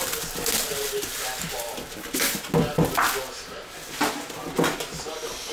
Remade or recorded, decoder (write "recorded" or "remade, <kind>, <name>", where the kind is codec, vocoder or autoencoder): recorded